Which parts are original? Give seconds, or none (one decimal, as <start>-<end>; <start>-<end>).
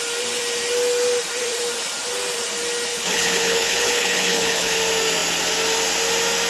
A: 0.0-2.9; 4.8-6.5